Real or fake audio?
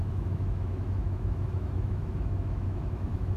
fake